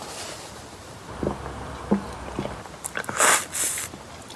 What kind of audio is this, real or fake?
real